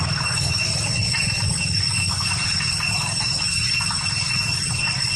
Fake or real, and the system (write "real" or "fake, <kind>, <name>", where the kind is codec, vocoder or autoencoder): real